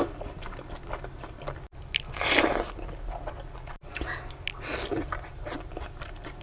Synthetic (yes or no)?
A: no